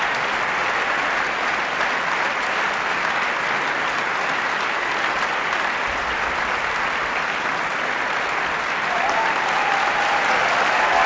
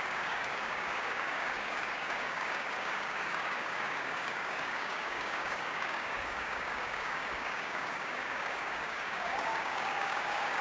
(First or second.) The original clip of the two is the first